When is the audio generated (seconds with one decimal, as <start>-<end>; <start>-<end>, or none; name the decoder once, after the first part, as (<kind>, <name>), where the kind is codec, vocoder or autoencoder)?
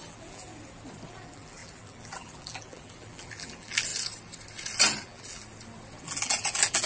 0.0-0.5 (vocoder, BigVGAN v2); 1.1-3.9; 5.0-5.4; 6.0-6.9